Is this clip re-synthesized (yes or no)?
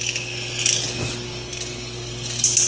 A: no